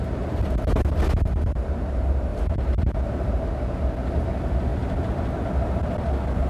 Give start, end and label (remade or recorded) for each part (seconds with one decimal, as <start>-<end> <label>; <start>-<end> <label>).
0.0-2.3 recorded; 2.3-3.5 remade; 3.5-4.7 recorded; 4.7-5.4 remade; 5.4-6.5 recorded